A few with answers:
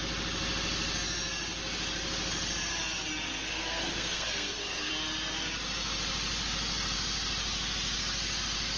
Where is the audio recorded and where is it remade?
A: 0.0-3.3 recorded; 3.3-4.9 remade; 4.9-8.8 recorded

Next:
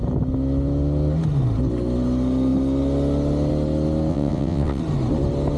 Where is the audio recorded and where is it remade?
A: 0.0-4.1 recorded; 4.1-4.8 remade; 4.8-5.6 recorded

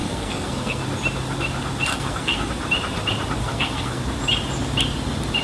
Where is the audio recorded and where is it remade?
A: 0.0-0.8 remade; 0.8-1.9 recorded; 1.9-2.5 remade; 2.5-3.4 recorded; 3.4-4.0 remade; 4.0-5.4 recorded

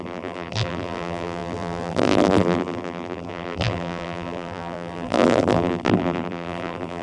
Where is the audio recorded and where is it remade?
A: 0.0-7.0 remade